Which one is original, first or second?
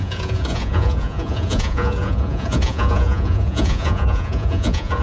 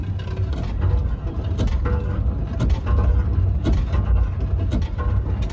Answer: second